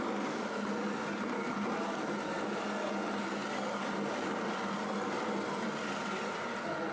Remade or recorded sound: recorded